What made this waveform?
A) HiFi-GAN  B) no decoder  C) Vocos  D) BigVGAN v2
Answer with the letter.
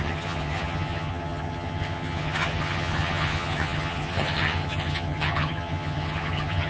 A